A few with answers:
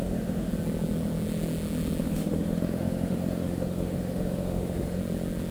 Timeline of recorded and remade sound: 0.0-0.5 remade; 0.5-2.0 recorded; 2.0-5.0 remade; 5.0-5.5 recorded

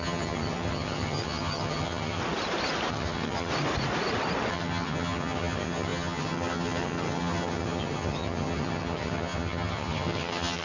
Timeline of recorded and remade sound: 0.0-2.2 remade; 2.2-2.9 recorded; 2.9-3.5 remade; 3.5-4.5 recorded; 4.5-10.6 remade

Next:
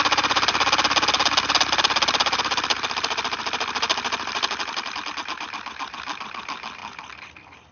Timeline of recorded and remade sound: 0.0-7.7 recorded

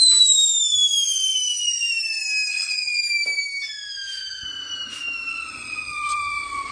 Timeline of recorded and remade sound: 0.0-2.5 recorded; 2.5-3.0 remade; 3.0-5.3 recorded; 5.3-6.7 remade

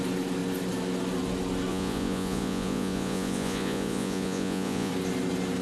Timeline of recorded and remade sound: 0.0-1.7 recorded; 1.7-4.9 remade; 4.9-5.6 recorded